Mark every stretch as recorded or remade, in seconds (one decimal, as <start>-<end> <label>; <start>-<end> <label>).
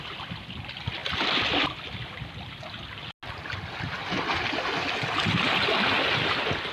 0.0-6.7 recorded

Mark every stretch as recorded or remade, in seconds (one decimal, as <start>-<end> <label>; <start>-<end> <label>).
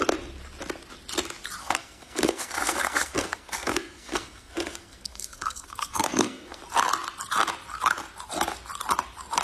0.0-1.6 recorded; 1.6-6.6 remade; 6.6-9.4 recorded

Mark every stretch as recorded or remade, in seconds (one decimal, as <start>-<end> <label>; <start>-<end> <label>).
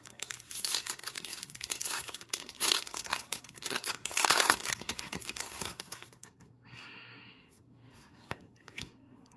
0.0-9.4 remade